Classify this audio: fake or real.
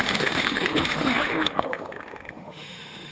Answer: fake